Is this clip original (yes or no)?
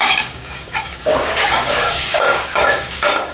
no